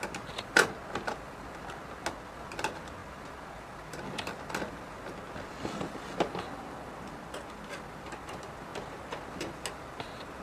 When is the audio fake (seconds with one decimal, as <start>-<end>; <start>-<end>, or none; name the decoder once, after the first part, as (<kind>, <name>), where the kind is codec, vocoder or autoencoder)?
none

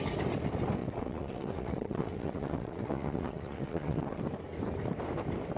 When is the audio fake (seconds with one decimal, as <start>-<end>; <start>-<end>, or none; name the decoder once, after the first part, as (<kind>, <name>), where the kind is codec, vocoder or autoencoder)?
0.8-4.2 (vocoder, WaveNeXt)

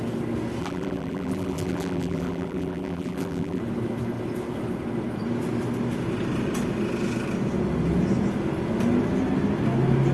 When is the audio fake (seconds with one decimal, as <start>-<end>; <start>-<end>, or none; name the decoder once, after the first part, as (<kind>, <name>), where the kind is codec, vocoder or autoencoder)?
0.6-3.6 (vocoder, BigVGAN v2)